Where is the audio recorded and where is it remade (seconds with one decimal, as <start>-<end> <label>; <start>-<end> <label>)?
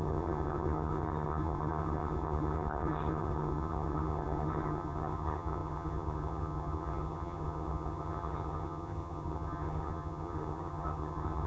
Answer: 0.0-11.5 remade